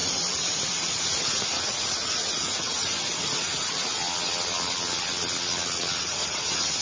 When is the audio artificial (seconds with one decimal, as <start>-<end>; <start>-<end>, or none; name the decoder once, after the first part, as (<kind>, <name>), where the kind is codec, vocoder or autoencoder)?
0.0-4.0 (vocoder, Vocos); 6.0-6.8